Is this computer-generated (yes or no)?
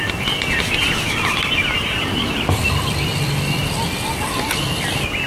no